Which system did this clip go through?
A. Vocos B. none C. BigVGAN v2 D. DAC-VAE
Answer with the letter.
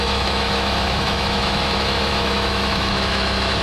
D